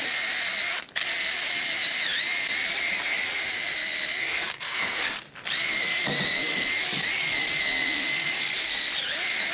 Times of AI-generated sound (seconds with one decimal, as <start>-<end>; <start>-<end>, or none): 4.2-5.1